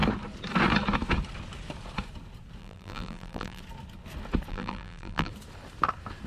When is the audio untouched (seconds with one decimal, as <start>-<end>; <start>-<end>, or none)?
0.0-2.6; 3.6-4.5; 5.3-6.3